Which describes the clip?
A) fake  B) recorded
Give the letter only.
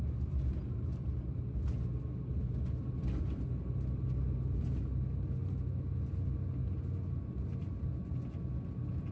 B